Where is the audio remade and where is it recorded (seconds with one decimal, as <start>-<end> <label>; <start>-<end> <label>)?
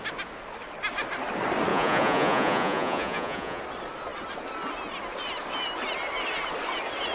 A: 0.0-1.7 recorded; 1.7-3.6 remade; 3.6-7.1 recorded